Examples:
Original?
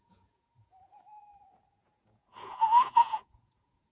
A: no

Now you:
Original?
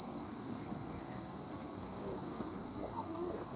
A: no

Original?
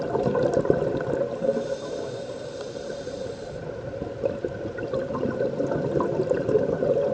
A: yes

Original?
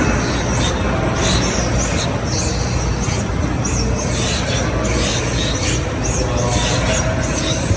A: yes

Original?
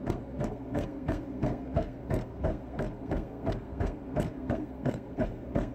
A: no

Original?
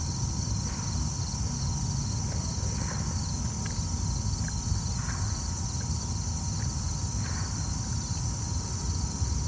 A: yes